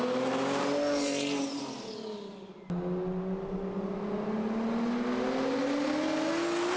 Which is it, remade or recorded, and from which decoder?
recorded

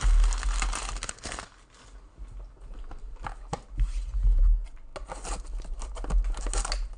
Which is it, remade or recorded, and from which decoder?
recorded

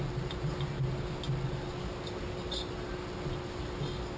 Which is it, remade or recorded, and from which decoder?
recorded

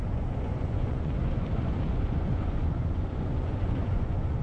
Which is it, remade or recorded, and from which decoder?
remade, vocoder, Vocos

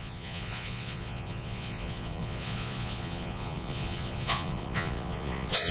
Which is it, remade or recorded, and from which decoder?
remade, vocoder, Vocos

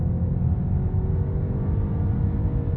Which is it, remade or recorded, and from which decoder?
recorded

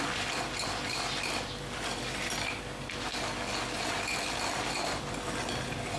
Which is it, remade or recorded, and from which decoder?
recorded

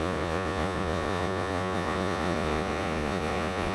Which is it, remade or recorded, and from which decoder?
remade, vocoder, Vocos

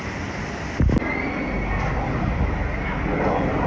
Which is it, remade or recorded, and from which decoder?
recorded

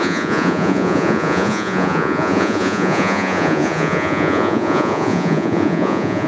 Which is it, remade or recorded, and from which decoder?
remade, vocoder, Vocos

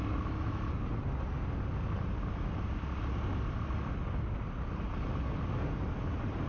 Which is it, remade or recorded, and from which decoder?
recorded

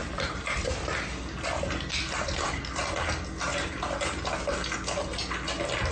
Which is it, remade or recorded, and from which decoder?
recorded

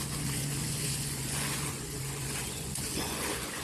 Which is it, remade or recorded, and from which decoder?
remade, vocoder, Vocos